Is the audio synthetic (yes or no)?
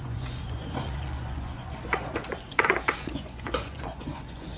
yes